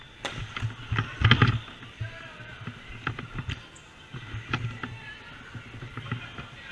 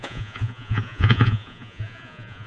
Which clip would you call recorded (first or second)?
first